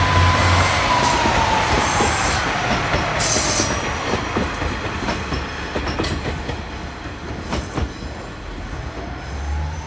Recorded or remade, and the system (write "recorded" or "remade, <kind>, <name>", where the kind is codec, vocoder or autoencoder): recorded